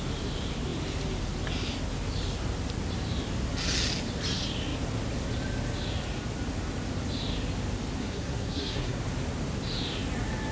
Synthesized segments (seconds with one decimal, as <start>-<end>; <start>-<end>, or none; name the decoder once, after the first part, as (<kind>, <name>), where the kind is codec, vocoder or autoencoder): 8.0-9.0 (codec, SNAC)